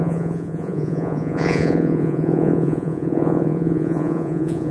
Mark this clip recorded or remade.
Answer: remade